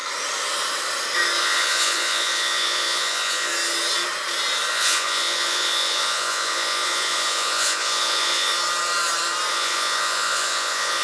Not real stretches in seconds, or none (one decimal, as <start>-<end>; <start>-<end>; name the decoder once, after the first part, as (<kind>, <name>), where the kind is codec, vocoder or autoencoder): 1.4-3.5 (vocoder, Vocos); 4.7-8.5; 9.5-11.0